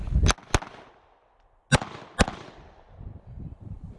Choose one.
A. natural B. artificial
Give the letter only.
A